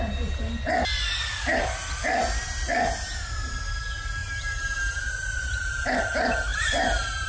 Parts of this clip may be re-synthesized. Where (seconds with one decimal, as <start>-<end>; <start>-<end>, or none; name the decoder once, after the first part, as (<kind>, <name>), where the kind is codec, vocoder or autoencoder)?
4.2-4.8 (vocoder, BigVGAN v2); 5.4-5.9; 6.5-7.3